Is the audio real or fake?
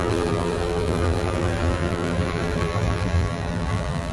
fake